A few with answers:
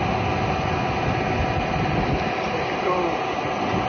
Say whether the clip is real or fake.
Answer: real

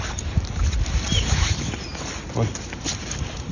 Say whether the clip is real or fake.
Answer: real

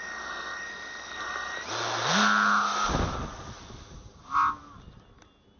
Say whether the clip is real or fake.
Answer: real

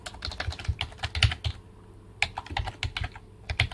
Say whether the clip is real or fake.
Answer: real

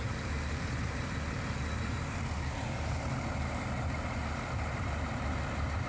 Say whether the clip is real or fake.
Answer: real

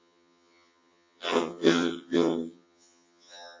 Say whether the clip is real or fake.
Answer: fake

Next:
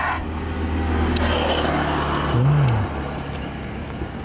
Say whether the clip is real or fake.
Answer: real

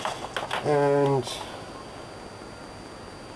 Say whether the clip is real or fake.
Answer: real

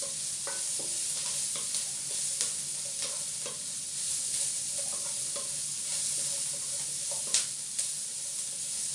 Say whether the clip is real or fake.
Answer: real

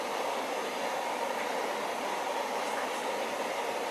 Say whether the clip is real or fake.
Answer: real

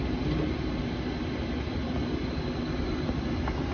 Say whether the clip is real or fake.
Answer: real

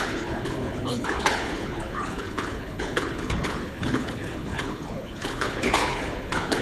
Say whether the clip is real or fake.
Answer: fake